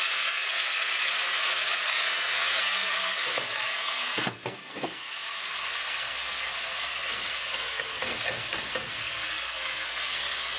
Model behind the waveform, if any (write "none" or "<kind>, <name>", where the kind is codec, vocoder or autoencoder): codec, SNAC